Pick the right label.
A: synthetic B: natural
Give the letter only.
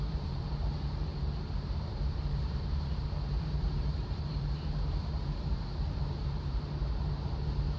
A